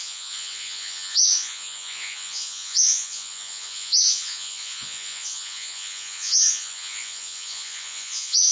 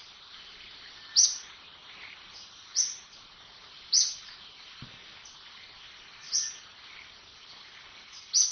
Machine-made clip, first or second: first